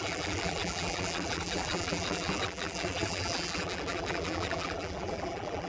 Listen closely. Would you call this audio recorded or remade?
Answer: remade